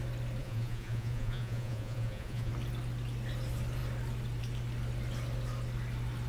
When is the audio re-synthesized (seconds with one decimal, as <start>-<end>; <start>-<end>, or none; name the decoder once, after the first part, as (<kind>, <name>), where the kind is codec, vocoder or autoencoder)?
0.4-2.5 (vocoder, Vocos)